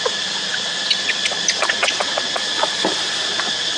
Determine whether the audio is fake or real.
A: real